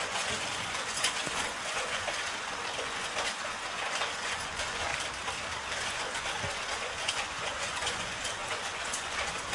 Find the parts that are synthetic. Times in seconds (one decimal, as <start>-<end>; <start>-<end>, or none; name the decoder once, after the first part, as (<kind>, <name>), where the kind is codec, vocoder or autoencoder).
0.0-4.9 (vocoder, Vocos); 5.8-9.5